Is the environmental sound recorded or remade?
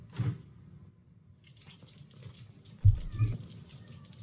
recorded